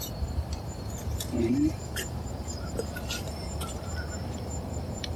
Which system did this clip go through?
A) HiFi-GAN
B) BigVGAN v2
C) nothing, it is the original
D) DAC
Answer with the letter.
B